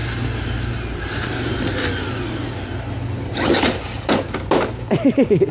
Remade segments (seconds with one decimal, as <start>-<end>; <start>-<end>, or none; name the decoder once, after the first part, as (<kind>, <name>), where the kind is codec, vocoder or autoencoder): none